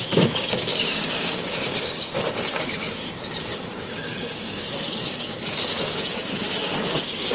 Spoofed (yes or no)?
yes